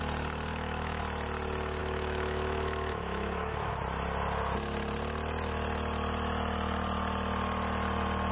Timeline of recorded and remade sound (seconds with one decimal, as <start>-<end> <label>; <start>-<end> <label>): 0.0-0.5 recorded; 0.5-1.0 remade; 1.0-1.8 recorded; 1.8-3.7 remade; 3.7-8.3 recorded